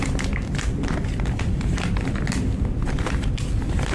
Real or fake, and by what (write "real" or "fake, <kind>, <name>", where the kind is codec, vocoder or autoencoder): real